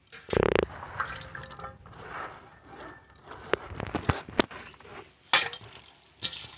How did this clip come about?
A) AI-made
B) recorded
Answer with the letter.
B